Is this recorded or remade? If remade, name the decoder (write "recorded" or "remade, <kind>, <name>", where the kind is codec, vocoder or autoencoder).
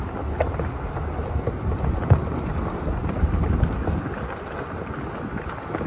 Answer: recorded